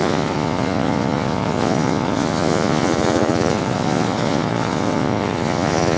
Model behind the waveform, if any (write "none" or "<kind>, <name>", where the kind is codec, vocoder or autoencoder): vocoder, Vocos